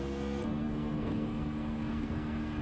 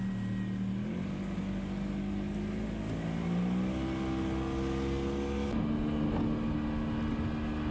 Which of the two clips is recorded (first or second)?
second